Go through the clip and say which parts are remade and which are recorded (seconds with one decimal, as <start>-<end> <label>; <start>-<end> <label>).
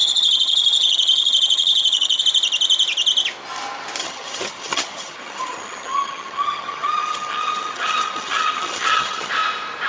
0.0-2.2 remade; 2.2-4.0 recorded; 4.0-9.3 remade; 9.3-9.9 recorded